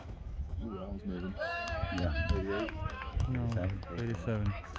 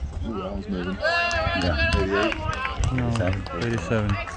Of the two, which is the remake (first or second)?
first